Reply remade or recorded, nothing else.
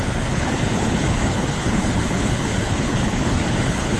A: remade